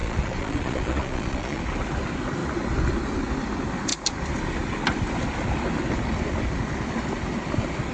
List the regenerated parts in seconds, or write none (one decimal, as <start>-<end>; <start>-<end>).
0.0-1.6